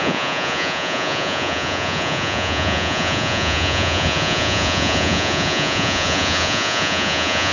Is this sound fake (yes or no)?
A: yes